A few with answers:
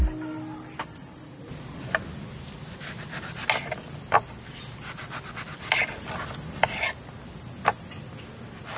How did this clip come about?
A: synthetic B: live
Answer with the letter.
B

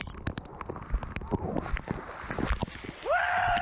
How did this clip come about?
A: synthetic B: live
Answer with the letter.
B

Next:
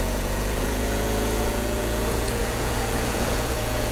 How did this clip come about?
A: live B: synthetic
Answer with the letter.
B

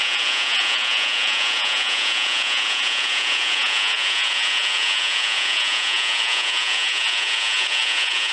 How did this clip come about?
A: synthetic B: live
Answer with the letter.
A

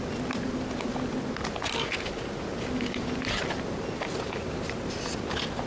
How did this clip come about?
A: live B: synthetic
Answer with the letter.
A